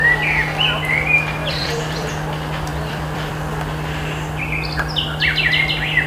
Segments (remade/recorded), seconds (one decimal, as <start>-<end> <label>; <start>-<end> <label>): 0.0-1.4 recorded; 1.4-2.1 remade; 2.1-2.7 recorded; 2.7-3.3 remade; 3.3-6.1 recorded